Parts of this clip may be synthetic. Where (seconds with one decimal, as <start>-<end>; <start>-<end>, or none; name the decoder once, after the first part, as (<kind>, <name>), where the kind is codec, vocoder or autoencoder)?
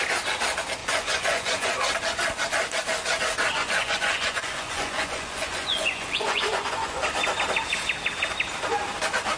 0.8-1.7 (vocoder, Vocos); 3.6-7.0